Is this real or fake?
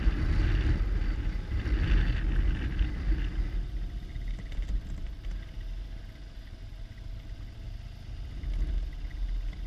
real